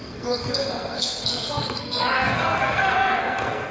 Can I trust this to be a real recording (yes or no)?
no